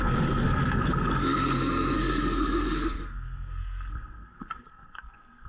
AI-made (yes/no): yes